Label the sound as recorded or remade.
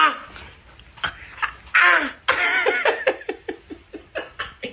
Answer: recorded